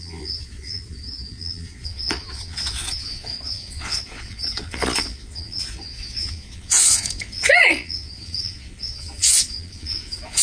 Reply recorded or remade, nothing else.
remade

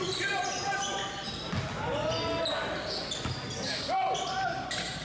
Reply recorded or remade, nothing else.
recorded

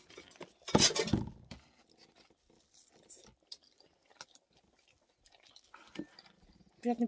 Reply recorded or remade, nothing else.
recorded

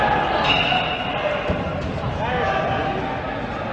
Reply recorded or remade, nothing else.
recorded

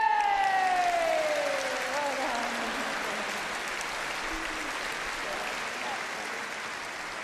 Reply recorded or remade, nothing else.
recorded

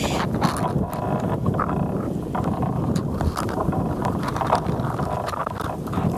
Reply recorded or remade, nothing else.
recorded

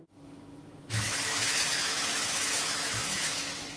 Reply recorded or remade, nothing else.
remade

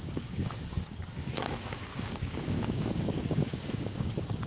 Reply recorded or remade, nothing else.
remade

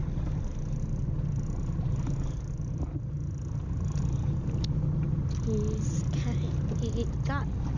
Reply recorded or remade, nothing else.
recorded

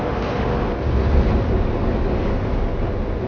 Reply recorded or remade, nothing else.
recorded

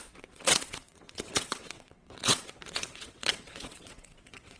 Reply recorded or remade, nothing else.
remade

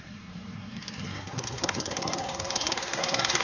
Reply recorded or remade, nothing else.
remade